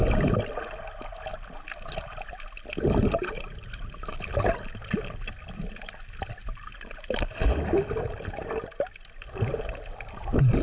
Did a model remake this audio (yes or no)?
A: no